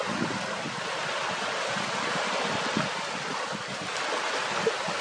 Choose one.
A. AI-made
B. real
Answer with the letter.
B